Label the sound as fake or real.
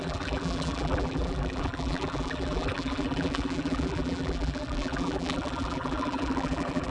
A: fake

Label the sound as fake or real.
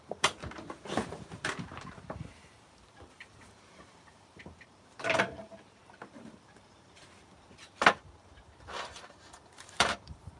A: fake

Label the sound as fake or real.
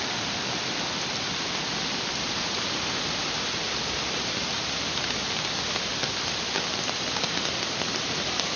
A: fake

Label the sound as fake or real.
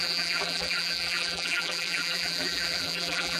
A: fake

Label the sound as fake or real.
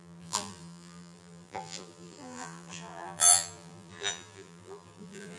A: fake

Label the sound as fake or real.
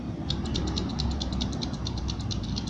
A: fake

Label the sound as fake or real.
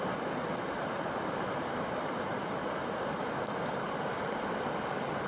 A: fake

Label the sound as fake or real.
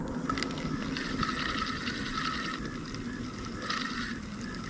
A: real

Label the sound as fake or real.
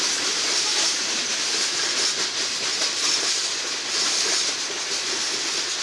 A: real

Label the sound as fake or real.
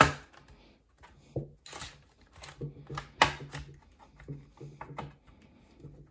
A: real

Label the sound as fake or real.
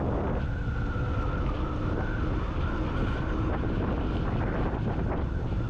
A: real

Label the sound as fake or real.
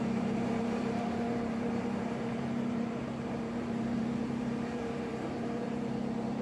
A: fake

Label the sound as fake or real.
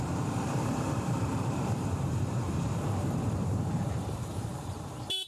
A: fake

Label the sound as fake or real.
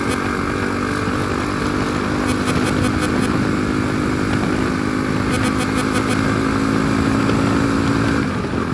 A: real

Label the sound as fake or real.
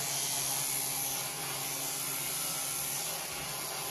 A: real